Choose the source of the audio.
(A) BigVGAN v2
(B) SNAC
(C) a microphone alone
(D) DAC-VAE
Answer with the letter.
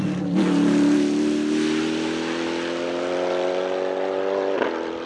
C